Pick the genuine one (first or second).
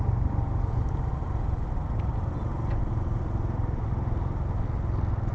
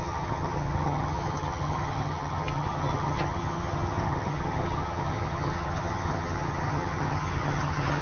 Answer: first